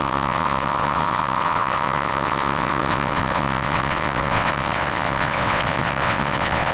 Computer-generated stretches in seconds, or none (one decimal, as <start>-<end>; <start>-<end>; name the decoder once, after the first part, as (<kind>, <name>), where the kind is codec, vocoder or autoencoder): 0.0-6.7 (vocoder, WaveNeXt)